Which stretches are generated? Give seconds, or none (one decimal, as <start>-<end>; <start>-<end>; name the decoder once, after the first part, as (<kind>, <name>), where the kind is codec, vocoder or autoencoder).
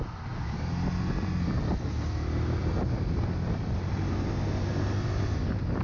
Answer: 2.6-3.9 (vocoder, BigVGAN v2)